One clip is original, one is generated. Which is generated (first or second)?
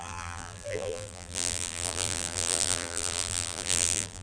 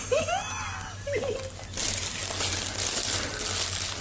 first